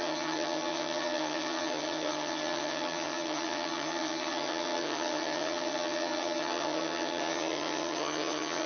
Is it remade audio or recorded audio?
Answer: remade